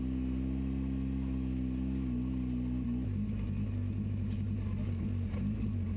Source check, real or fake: real